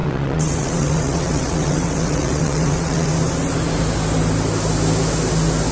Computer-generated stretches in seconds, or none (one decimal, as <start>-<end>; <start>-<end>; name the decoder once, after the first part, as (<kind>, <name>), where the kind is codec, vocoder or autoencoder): 0.0-3.1 (vocoder, WaveNeXt)